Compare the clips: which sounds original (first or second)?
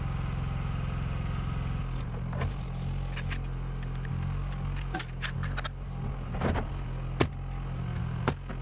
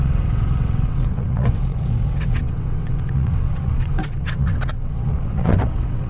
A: first